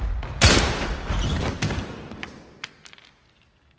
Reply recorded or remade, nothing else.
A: recorded